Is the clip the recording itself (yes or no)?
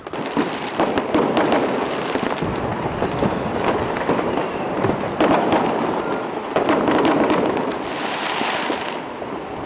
no